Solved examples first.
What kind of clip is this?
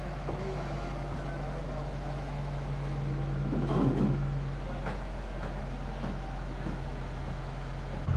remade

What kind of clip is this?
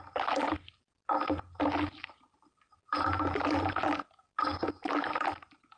recorded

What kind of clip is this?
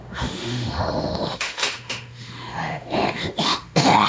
remade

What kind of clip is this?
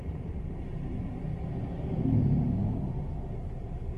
recorded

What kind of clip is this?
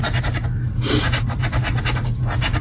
recorded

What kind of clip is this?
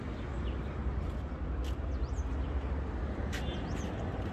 recorded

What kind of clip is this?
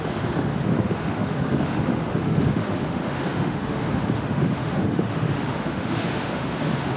remade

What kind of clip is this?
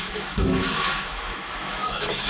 remade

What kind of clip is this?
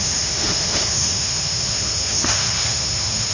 remade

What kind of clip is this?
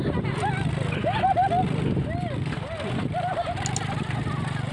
recorded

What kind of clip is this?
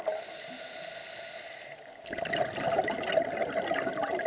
recorded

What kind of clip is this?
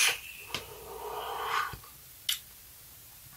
recorded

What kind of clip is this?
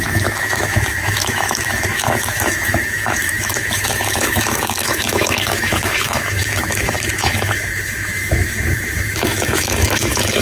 remade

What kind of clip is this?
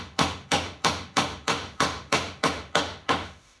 remade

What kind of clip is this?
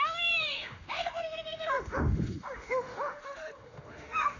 remade